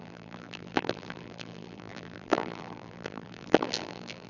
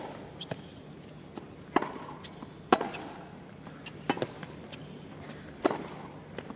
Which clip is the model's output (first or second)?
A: first